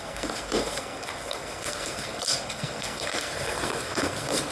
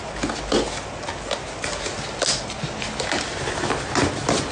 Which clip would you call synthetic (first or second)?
first